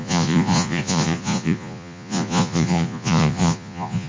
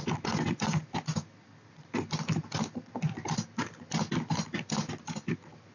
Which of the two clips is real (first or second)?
second